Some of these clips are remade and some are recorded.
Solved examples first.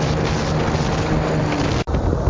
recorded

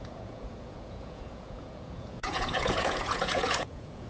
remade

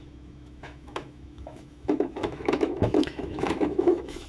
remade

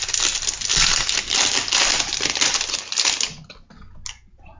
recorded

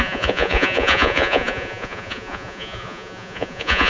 remade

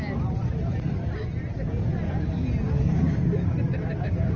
remade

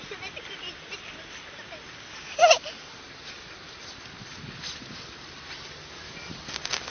recorded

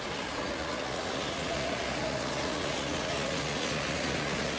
remade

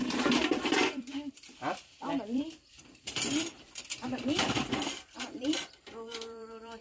remade